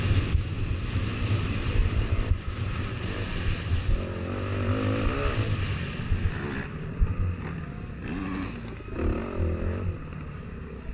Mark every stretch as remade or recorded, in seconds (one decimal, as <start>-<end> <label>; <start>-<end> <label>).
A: 0.0-10.9 recorded